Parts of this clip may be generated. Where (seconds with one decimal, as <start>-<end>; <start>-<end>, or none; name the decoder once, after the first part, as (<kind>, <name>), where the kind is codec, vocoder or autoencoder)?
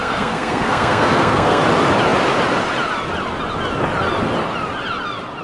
0.0-1.6 (codec, SNAC)